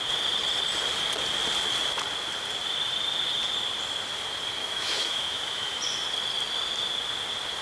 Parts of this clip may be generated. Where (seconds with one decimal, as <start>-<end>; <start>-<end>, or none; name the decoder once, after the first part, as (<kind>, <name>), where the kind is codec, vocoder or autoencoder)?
4.6-5.8 (autoencoder, DAC-VAE)